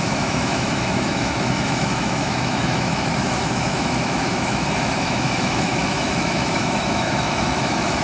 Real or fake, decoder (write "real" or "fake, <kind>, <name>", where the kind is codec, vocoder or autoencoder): fake, autoencoder, DAC-VAE